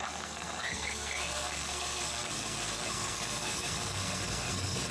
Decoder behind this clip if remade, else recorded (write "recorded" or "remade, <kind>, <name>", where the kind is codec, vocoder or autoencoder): remade, codec, SNAC